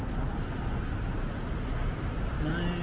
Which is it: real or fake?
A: real